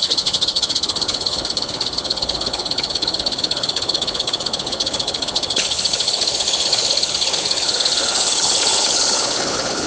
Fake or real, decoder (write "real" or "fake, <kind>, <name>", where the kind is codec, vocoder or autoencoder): fake, codec, HILCodec